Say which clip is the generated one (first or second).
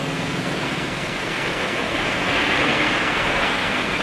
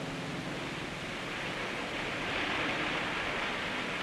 first